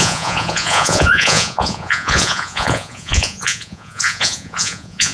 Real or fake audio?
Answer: fake